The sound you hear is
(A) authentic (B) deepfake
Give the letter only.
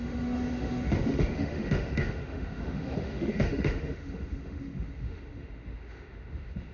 B